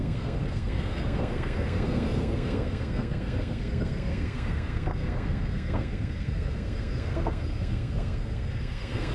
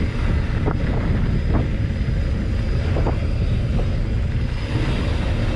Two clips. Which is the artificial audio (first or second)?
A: first